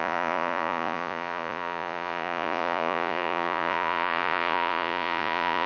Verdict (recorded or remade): remade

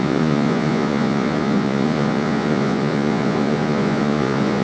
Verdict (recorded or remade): remade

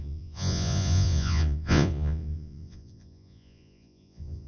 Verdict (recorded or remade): remade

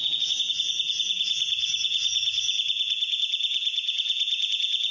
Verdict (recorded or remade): remade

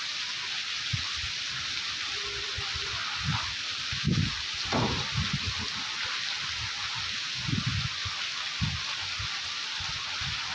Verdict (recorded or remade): recorded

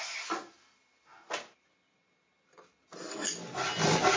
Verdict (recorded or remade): recorded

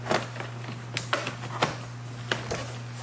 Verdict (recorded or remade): recorded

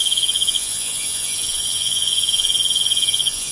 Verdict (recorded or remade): remade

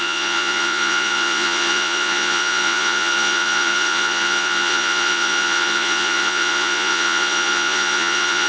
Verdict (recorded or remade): remade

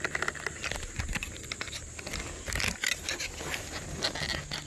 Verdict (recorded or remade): recorded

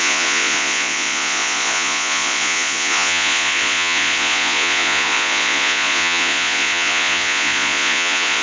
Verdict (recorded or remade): remade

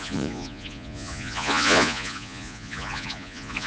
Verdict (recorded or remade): remade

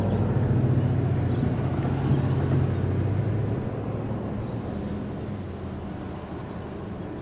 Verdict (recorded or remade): recorded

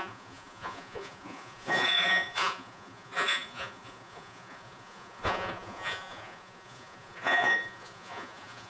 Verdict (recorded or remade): remade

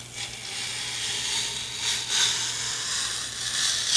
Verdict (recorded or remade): recorded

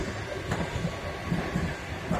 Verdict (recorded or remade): recorded